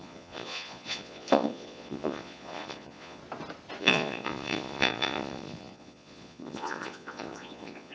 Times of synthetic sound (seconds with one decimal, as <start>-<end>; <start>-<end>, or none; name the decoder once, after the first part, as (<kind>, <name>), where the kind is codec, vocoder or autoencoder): 0.0-3.2 (vocoder, Vocos); 3.8-7.9